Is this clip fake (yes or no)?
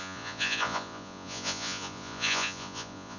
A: yes